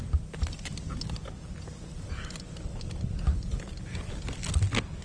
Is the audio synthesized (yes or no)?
no